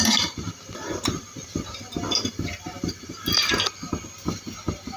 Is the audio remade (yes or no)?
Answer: no